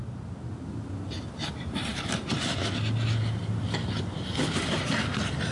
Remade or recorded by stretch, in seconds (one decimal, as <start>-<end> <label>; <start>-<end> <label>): 0.0-5.5 recorded